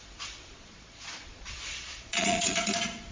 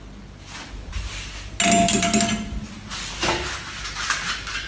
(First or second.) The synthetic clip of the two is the first